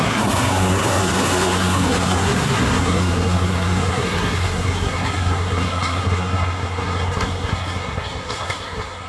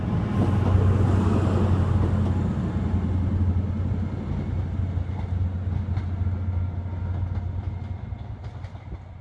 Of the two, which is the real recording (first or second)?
second